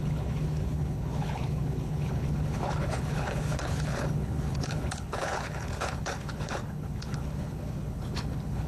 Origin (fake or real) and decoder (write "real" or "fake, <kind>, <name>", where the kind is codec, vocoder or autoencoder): fake, codec, HILCodec